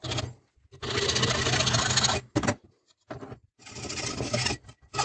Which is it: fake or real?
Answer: real